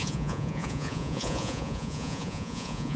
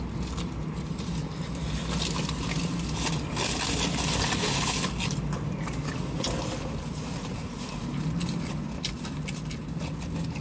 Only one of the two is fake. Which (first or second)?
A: first